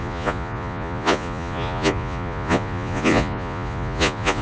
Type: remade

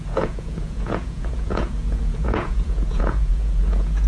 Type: remade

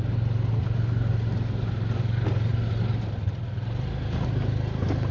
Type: recorded